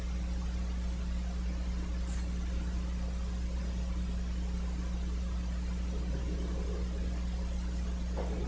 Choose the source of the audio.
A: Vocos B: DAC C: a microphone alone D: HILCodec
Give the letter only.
C